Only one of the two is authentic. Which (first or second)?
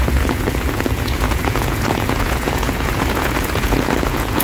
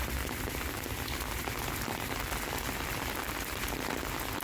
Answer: second